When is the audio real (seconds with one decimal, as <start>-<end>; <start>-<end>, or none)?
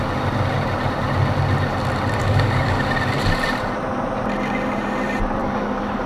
0.0-2.2; 2.9-5.4